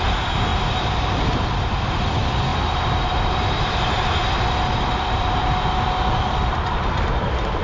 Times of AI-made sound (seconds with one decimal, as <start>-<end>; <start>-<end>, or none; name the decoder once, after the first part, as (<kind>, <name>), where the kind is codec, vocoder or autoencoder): 0.0-4.2 (vocoder, BigVGAN v2); 4.9-7.6